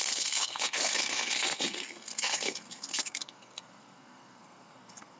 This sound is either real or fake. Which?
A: fake